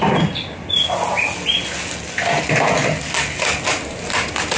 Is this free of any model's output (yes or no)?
yes